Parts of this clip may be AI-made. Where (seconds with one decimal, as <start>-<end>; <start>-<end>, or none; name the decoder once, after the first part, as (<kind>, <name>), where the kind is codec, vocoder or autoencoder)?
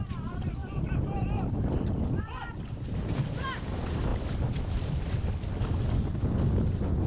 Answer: 0.6-3.1 (vocoder, BigVGAN v2); 4.1-5.7